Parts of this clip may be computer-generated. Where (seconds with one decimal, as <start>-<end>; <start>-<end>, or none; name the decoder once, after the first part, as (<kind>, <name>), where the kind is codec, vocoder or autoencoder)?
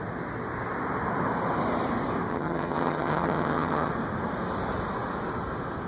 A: 2.3-3.9 (vocoder, HiFi-GAN)